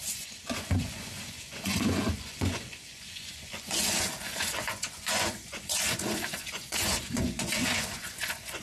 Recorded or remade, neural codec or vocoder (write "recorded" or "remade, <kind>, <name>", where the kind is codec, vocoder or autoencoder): remade, vocoder, Vocos